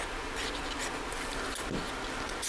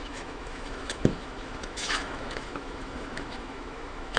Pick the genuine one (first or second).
first